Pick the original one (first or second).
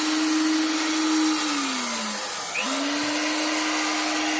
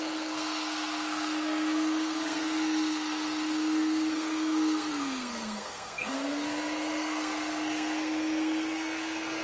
first